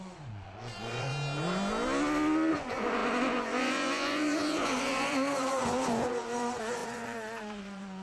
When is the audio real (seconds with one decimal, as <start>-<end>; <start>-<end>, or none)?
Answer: 1.1-2.5